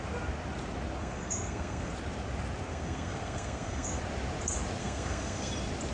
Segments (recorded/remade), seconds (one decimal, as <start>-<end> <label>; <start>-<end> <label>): 0.0-1.0 recorded; 1.0-1.9 remade; 1.9-2.7 recorded; 2.7-4.0 remade; 4.0-4.8 recorded; 4.8-5.5 remade; 5.5-5.9 recorded